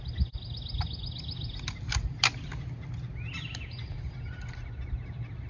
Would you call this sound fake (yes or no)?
no